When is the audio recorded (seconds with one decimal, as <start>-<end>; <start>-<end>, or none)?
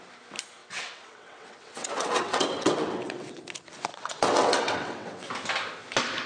0.0-0.6; 3.4-3.9; 5.3-6.3